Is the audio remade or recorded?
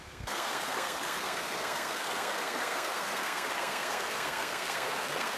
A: remade